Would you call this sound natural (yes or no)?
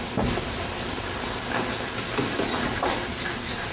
yes